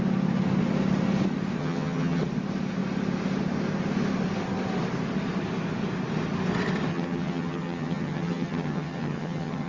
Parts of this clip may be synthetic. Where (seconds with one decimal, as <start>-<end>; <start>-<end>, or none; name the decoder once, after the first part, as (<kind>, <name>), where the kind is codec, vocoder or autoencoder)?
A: 1.6-2.2 (vocoder, HiFi-GAN); 6.9-9.7